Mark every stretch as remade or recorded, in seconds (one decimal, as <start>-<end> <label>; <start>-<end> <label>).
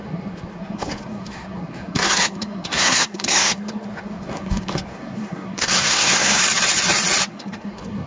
0.0-6.4 remade; 6.4-7.3 recorded; 7.3-8.1 remade